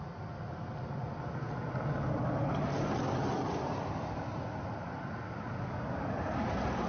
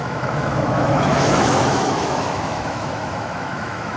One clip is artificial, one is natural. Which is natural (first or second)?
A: first